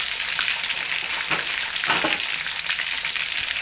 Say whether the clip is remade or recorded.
recorded